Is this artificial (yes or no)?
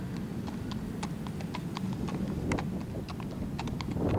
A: no